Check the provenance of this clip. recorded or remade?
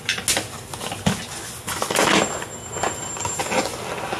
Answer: recorded